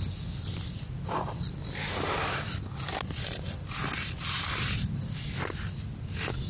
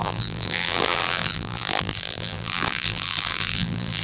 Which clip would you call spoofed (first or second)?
second